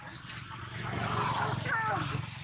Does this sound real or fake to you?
real